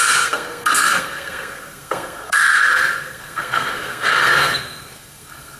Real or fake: fake